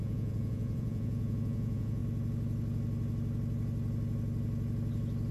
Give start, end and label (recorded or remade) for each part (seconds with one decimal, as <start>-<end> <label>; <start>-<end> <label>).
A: 0.0-2.0 remade; 2.0-5.3 recorded